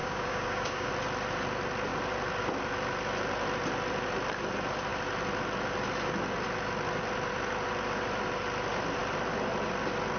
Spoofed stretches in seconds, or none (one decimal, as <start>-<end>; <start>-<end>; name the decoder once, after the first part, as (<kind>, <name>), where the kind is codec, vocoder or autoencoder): 0.0-0.9 (codec, DAC)